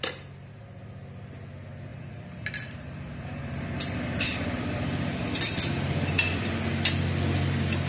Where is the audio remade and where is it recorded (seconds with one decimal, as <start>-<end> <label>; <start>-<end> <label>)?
0.0-1.9 recorded; 1.9-6.6 remade; 6.6-7.9 recorded